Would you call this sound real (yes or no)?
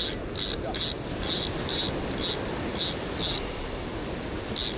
yes